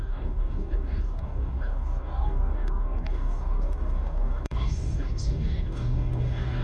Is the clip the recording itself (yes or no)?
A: no